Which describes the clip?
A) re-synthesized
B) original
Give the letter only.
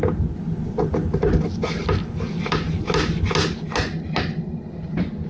B